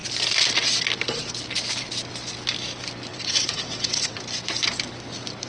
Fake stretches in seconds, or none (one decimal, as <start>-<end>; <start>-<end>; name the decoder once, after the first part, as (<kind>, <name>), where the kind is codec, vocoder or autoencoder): 3.1-4.2 (vocoder, WaveNeXt)